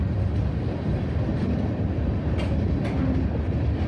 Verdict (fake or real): real